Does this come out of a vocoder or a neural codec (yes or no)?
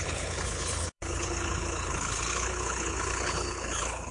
yes